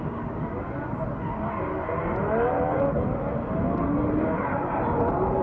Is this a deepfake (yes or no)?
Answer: no